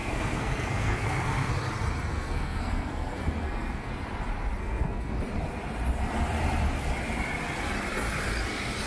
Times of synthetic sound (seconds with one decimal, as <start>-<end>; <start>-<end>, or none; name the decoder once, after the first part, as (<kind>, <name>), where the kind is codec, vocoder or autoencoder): 0.0-1.5 (codec, SNAC); 2.1-3.9; 4.6-5.2